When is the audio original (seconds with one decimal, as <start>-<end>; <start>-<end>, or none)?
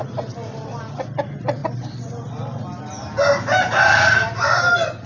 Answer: 0.0-5.1